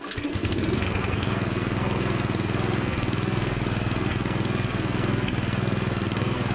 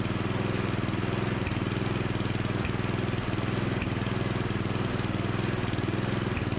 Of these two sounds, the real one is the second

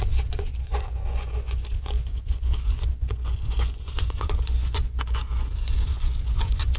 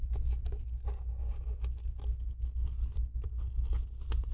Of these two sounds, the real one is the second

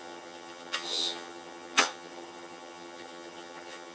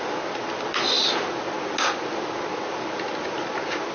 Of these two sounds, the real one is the second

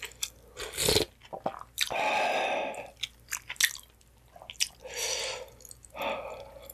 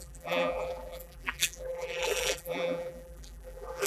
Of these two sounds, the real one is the first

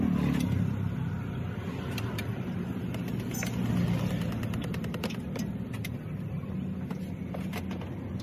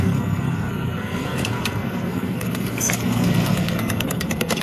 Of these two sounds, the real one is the first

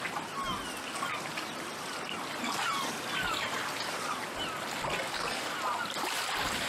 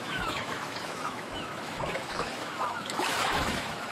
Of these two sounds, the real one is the first